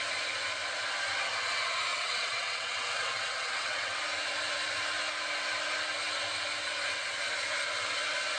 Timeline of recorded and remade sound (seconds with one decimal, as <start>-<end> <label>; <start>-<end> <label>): 0.0-1.9 recorded; 1.9-4.0 remade; 4.0-8.4 recorded